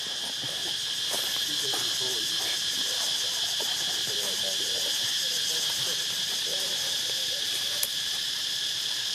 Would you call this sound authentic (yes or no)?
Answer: no